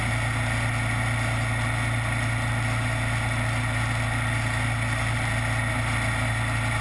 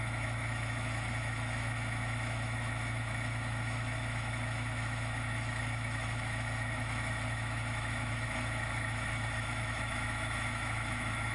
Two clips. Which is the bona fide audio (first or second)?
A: first